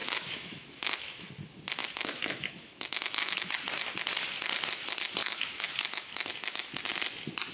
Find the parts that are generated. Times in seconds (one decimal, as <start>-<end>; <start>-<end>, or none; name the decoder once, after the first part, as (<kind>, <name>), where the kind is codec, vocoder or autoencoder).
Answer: 0.0-1.3 (autoencoder, DAC-VAE); 1.8-3.5; 5.2-6.8